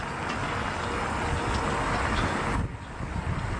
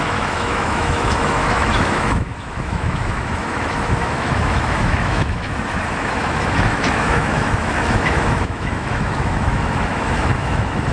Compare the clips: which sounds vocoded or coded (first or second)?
second